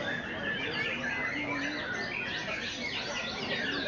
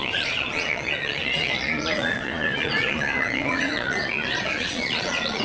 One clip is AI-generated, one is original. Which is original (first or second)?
first